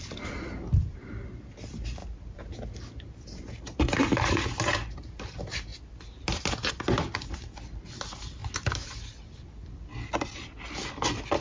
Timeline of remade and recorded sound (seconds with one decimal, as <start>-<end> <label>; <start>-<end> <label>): 0.0-11.4 recorded